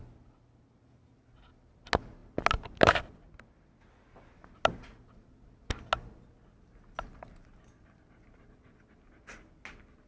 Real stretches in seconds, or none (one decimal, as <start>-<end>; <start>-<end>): 0.0-10.1